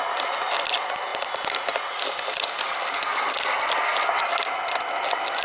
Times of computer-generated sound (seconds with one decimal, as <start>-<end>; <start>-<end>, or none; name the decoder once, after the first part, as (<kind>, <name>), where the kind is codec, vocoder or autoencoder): none